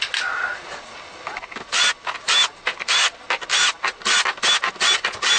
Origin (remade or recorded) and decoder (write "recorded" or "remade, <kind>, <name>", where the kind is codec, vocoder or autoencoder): recorded